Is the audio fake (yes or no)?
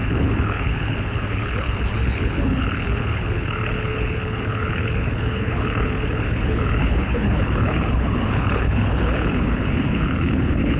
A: yes